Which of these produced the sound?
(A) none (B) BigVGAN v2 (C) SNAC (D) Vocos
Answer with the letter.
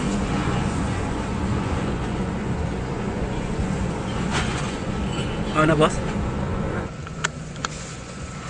D